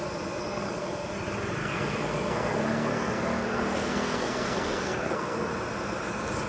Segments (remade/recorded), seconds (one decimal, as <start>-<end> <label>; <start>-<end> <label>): 0.0-0.4 recorded; 0.4-1.1 remade; 1.1-1.6 recorded; 1.6-5.5 remade; 5.5-6.5 recorded